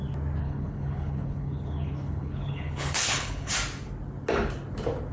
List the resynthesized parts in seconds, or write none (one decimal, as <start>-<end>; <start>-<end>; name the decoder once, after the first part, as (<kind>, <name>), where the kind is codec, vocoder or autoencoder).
0.4-3.5 (codec, HILCodec)